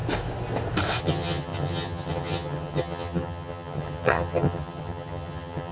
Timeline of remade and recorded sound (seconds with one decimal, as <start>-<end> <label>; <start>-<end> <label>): 0.0-1.0 recorded; 1.0-5.7 remade